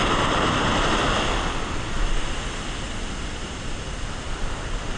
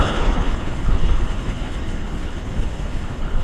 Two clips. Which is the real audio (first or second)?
first